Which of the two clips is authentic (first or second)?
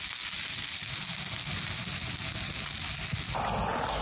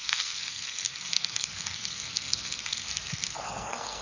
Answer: first